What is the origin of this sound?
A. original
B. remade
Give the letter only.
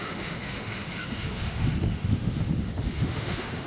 B